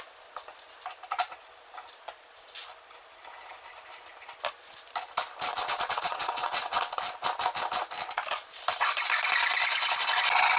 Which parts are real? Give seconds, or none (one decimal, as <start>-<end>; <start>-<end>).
0.0-5.5; 7.0-10.6